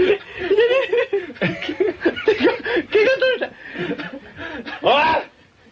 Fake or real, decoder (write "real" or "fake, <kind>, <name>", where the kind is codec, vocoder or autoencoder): real